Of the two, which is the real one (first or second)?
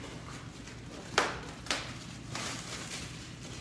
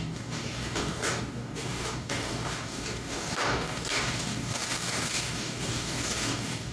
first